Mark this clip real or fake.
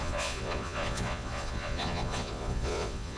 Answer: fake